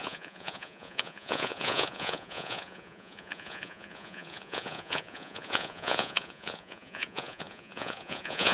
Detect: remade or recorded remade